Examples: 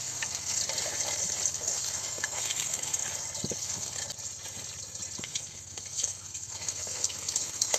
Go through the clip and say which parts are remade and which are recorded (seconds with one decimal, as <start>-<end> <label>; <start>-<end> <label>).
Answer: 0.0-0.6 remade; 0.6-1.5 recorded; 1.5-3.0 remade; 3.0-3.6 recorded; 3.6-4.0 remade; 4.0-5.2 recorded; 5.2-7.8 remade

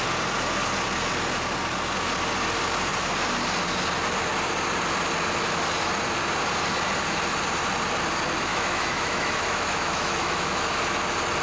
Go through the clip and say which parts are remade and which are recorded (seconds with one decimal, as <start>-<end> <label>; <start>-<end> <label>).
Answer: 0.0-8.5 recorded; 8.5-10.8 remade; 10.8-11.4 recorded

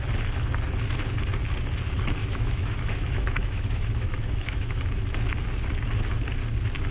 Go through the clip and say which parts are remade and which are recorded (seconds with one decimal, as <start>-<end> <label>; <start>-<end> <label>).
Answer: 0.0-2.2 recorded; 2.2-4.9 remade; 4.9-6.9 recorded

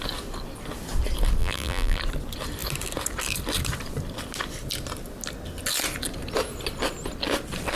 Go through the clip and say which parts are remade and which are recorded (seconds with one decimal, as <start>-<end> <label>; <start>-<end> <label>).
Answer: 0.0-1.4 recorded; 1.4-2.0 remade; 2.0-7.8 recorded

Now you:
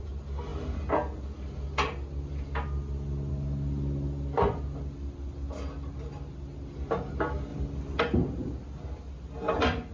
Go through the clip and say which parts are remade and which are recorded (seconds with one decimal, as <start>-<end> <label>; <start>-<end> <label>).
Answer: 0.0-9.9 recorded

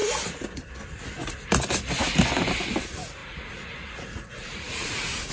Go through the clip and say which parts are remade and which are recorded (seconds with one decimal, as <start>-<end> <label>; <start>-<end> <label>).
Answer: 0.0-3.2 recorded; 3.2-5.3 remade

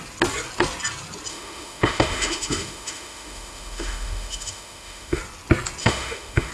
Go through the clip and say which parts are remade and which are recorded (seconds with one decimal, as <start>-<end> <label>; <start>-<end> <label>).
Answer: 0.0-1.3 recorded; 1.3-5.2 remade; 5.2-5.8 recorded; 5.8-6.5 remade